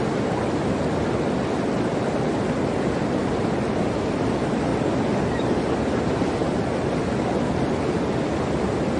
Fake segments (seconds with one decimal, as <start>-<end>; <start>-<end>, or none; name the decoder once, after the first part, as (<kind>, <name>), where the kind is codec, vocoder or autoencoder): none